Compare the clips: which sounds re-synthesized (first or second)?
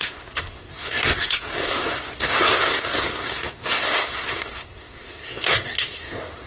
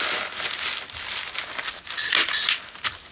first